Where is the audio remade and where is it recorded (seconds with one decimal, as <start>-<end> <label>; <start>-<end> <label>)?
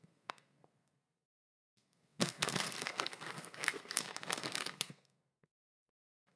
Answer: 0.0-6.4 remade